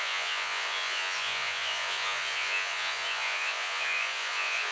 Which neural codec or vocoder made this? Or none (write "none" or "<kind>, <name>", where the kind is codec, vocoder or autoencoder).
vocoder, Vocos